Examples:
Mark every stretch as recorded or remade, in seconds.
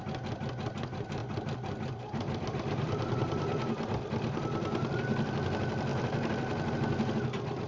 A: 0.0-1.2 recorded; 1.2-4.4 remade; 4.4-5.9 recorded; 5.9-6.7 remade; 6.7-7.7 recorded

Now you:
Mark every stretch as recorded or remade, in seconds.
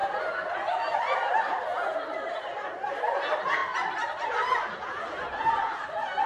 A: 0.0-1.0 remade; 1.0-1.7 recorded; 1.7-2.3 remade; 2.3-3.6 recorded; 3.6-4.5 remade; 4.5-6.3 recorded